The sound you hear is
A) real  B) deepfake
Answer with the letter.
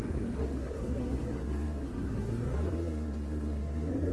B